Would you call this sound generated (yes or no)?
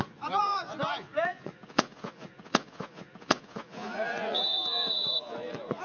yes